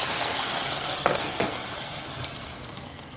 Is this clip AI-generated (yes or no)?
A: yes